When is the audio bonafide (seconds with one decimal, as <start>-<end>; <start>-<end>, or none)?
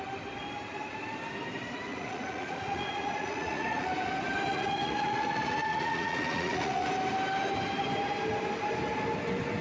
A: 0.0-1.9; 3.9-4.5; 6.9-9.6